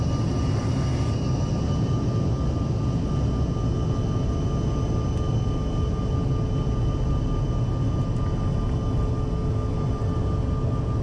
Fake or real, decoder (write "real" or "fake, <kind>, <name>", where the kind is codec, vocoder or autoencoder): real